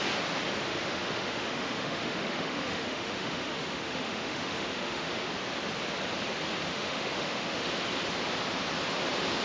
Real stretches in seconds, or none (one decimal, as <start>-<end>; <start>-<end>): 0.0-0.6; 5.3-6.7; 7.7-9.4